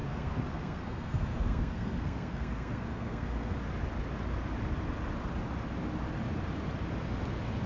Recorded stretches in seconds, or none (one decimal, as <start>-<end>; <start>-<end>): 3.6-7.7